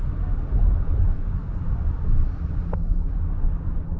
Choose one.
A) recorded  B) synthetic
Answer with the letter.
A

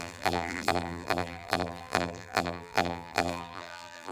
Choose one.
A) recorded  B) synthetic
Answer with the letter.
B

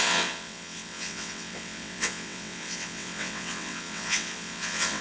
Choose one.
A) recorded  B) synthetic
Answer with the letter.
B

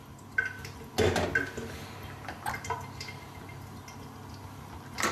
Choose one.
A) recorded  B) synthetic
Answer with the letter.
A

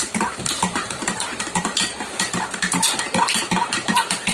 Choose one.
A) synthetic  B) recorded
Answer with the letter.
A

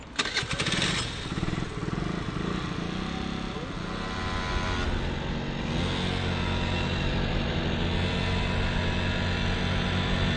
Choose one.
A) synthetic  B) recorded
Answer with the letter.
B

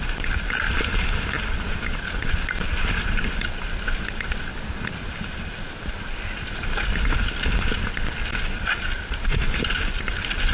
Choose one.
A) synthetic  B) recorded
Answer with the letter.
B